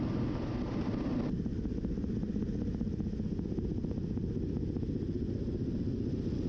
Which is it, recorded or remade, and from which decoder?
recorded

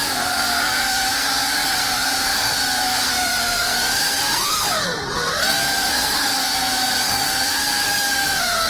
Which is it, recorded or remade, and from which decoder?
remade, codec, SNAC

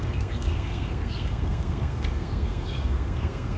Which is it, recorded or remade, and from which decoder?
remade, codec, SNAC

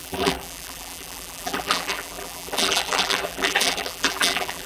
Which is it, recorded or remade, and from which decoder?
remade, vocoder, BigVGAN v2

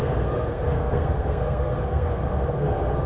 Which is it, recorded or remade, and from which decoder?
remade, codec, SNAC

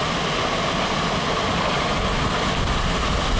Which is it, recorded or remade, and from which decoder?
recorded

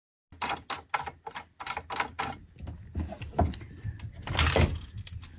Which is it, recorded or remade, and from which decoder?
recorded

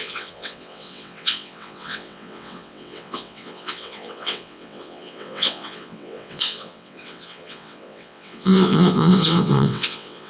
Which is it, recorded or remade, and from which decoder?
remade, vocoder, WaveNeXt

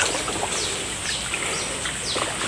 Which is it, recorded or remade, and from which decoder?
recorded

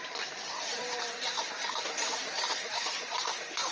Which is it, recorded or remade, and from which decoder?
remade, vocoder, BigVGAN v2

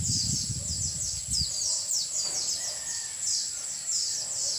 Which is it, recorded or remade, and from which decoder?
recorded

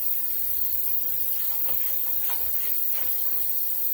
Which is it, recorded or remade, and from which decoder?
recorded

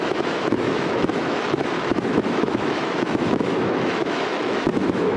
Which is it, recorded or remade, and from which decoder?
remade, autoencoder, DAC-VAE